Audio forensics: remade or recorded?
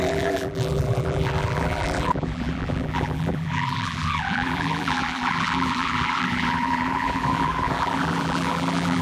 remade